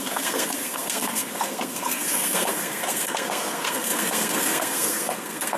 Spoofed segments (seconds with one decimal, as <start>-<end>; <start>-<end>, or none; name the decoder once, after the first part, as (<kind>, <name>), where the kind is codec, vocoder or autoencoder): 0.0-5.6 (codec, SNAC)